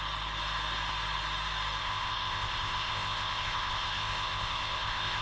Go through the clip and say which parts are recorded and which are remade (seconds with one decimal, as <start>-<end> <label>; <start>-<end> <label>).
0.0-1.8 recorded; 1.8-5.2 remade